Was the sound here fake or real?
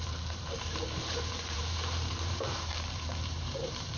fake